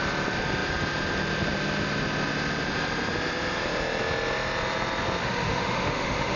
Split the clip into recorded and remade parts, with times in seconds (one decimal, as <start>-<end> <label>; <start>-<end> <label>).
0.0-5.2 recorded; 5.2-6.4 remade